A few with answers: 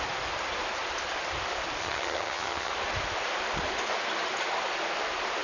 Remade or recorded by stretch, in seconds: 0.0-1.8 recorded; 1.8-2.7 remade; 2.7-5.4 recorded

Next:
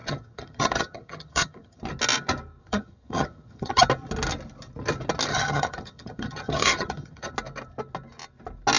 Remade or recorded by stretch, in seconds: 0.0-1.8 remade; 1.8-2.6 recorded; 2.6-3.8 remade; 3.8-5.3 recorded; 5.3-7.3 remade; 7.3-8.8 recorded

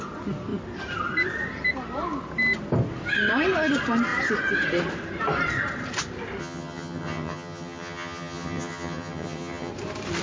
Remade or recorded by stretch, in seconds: 0.0-6.4 recorded; 6.4-9.7 remade; 9.7-10.2 recorded

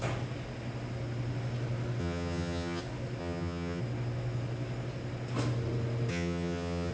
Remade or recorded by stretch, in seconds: 0.0-2.0 recorded; 2.0-2.8 remade; 2.8-3.2 recorded; 3.2-3.8 remade; 3.8-6.1 recorded; 6.1-6.9 remade

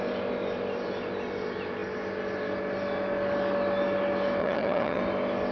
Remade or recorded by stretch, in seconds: 0.0-4.4 recorded; 4.4-5.0 remade; 5.0-5.5 recorded

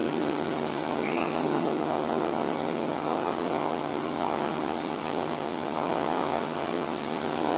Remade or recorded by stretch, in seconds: 0.0-7.6 remade